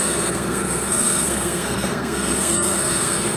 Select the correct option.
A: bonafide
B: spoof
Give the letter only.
B